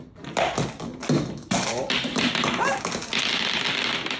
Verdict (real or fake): real